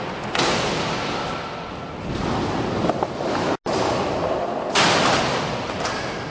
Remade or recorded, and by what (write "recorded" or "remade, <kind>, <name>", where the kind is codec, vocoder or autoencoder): recorded